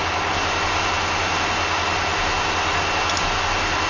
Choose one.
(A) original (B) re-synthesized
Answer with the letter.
A